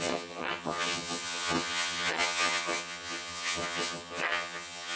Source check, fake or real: fake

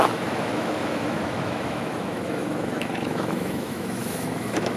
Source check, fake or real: fake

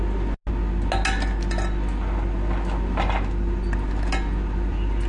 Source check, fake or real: real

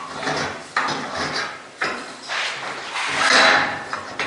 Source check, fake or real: real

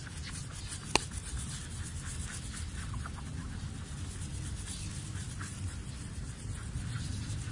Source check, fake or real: real